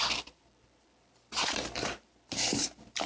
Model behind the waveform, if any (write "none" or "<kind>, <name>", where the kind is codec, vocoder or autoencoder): vocoder, BigVGAN v2